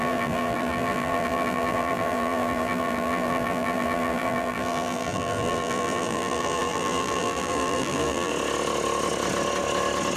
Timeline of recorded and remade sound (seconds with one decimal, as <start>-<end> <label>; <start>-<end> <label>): 0.0-8.3 remade; 8.3-10.2 recorded